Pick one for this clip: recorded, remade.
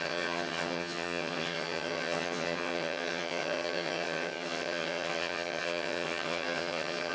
remade